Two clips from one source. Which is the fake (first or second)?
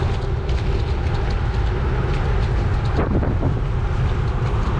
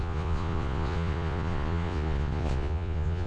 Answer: second